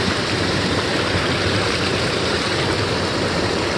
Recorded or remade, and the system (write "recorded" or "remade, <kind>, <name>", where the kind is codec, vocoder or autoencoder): remade, vocoder, BigVGAN v2